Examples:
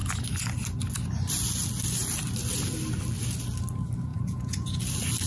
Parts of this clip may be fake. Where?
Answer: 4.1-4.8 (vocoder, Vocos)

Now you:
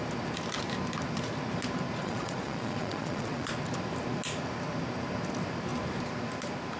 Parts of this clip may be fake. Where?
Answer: 2.0-3.5 (vocoder, Vocos)

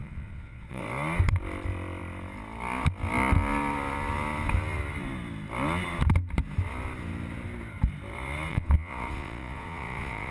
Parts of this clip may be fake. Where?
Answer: 0.0-0.8 (vocoder, Vocos); 8.5-10.3

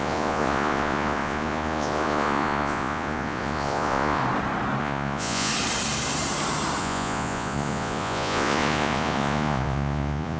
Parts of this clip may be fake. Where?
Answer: 0.0-4.2 (vocoder, Vocos); 4.8-5.5; 6.8-10.4

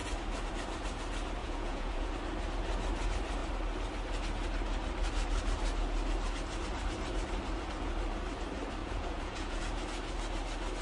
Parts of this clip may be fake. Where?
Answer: 1.4-2.1 (vocoder, Vocos); 8.8-9.6